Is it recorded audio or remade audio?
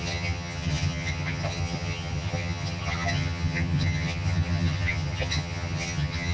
remade